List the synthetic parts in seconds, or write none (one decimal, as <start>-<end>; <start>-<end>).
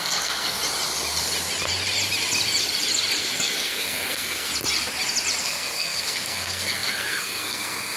0.0-0.6; 3.2-4.5; 5.4-8.0